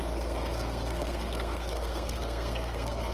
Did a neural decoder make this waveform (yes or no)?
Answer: yes